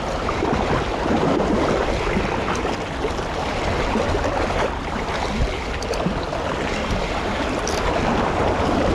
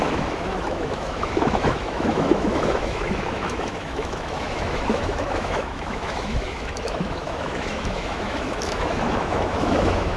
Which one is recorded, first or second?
first